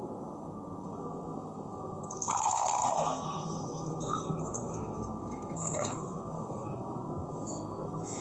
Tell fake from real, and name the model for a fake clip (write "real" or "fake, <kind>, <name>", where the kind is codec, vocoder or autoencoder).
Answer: fake, codec, SNAC